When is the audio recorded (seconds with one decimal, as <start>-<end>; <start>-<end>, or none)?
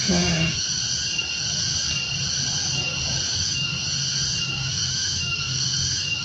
0.8-3.3; 3.7-4.4